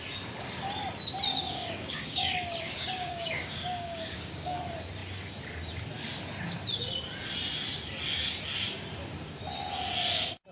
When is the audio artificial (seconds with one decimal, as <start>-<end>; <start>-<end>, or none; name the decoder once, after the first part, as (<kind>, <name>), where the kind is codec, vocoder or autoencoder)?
1.5-4.6 (codec, DAC)